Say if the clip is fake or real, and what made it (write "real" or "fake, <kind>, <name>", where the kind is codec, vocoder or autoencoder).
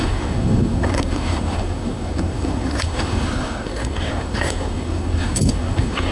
fake, codec, SNAC